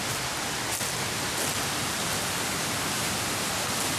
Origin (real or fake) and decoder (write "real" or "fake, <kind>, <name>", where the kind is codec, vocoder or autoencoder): real